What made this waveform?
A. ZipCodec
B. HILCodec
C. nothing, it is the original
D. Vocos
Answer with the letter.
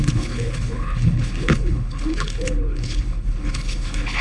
B